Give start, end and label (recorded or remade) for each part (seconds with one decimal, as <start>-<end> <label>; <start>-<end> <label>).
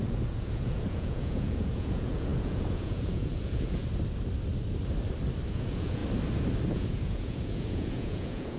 0.0-3.8 remade; 3.8-5.5 recorded; 5.5-6.0 remade; 6.0-6.7 recorded; 6.7-8.6 remade